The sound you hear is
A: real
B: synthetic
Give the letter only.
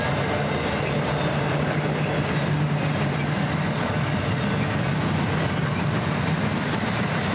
A